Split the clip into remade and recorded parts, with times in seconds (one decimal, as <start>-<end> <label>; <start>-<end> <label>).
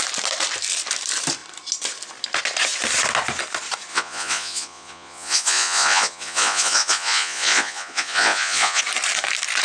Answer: 0.0-3.9 recorded; 3.9-8.8 remade; 8.8-9.6 recorded